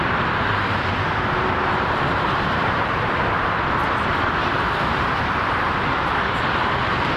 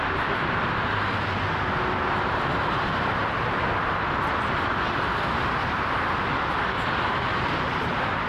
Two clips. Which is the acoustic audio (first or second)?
second